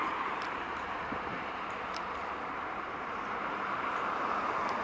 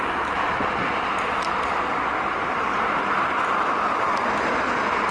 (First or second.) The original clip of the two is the second